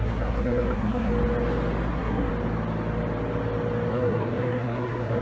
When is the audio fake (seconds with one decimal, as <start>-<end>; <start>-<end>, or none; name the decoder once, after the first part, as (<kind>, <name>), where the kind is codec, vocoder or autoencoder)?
0.0-1.1 (codec, SNAC); 1.9-2.3; 3.9-5.2